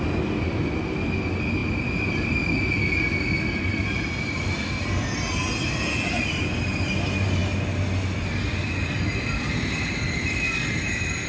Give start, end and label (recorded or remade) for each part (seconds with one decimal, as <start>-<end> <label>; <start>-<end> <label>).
0.0-11.3 recorded